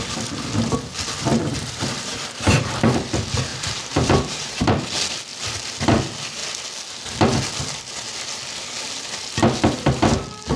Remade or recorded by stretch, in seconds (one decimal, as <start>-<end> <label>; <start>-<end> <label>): 0.0-1.3 recorded; 1.3-2.8 remade; 2.8-3.5 recorded; 3.5-4.7 remade; 4.7-10.6 recorded